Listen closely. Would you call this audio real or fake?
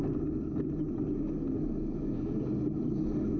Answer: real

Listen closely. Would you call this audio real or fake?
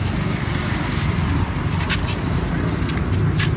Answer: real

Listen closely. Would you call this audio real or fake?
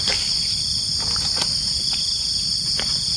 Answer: real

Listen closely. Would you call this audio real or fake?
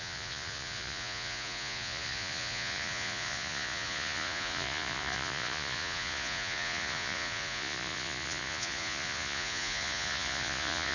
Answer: fake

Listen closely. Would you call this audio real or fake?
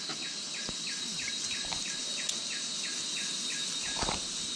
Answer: real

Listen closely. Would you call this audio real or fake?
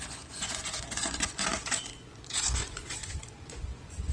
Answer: fake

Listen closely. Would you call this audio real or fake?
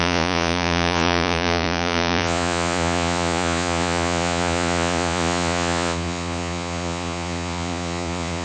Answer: fake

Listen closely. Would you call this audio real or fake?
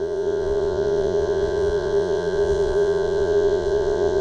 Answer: fake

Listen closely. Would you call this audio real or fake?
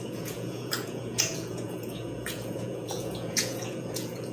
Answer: fake